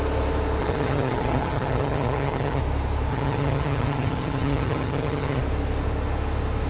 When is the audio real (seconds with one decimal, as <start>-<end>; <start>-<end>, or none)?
0.0-0.6; 2.6-3.1; 5.4-6.7